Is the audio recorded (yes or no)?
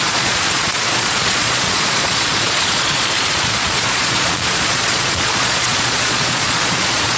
no